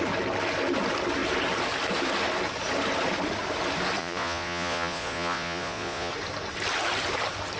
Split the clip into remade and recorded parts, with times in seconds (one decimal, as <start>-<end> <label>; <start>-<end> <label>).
0.0-4.0 recorded; 4.0-6.1 remade; 6.1-7.6 recorded